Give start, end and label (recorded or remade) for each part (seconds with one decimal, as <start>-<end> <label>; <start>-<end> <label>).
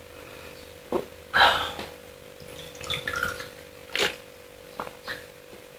0.0-5.8 recorded